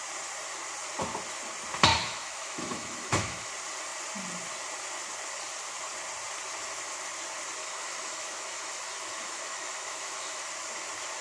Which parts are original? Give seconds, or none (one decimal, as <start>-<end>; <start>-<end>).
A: 0.0-1.9; 3.5-7.6; 10.5-11.2